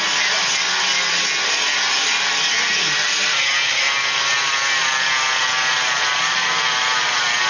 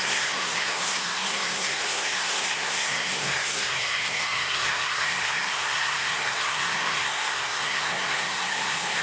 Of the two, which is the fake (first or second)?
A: second